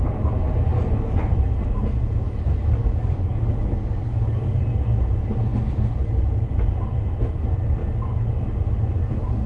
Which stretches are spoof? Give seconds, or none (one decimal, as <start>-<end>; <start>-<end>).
2.8-4.6